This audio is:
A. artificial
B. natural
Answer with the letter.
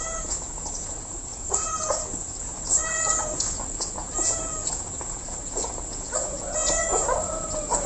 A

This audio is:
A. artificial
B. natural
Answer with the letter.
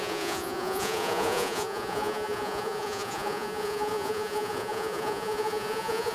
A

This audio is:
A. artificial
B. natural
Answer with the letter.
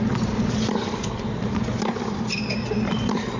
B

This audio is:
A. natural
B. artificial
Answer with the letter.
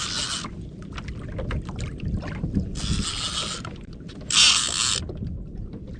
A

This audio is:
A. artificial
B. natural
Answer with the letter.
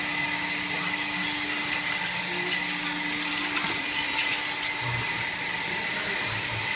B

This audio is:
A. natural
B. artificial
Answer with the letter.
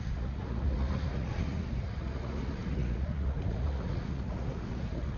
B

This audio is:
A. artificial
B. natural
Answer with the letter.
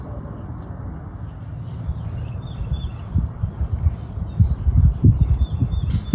B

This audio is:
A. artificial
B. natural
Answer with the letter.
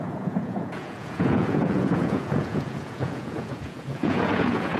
A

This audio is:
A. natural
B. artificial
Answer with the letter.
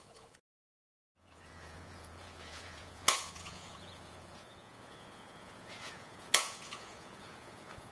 B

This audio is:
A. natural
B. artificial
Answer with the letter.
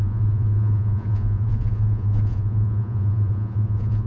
B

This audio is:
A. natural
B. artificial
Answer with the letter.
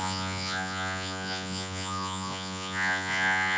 B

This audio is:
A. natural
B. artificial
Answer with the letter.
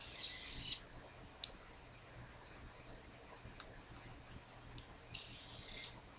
A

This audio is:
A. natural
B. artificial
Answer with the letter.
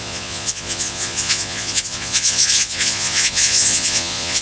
B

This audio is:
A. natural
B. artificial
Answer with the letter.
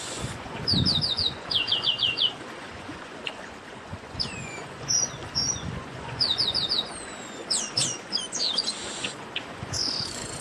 B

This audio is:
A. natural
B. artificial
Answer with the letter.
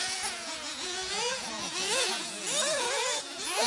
B